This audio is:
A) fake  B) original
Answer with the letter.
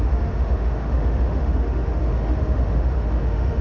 A